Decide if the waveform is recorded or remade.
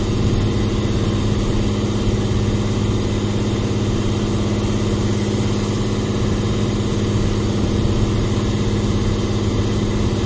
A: recorded